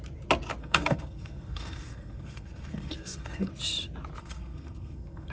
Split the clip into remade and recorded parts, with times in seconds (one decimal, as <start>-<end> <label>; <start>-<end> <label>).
0.0-0.6 recorded; 0.6-3.5 remade; 3.5-4.2 recorded; 4.2-5.3 remade

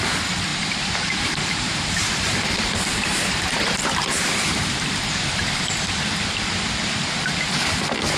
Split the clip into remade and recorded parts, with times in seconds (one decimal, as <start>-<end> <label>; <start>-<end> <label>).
0.0-0.5 recorded; 0.5-5.4 remade; 5.4-8.2 recorded

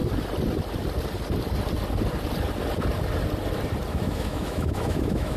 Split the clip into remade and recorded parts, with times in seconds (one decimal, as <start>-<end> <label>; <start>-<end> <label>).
0.0-3.9 recorded; 3.9-5.4 remade